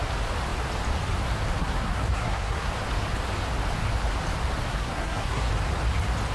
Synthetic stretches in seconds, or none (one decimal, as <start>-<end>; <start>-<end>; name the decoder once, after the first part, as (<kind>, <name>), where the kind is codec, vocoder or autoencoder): 1.6-2.7 (codec, SNAC); 4.7-5.5